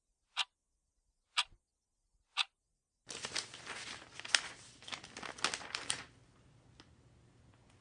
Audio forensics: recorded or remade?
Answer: recorded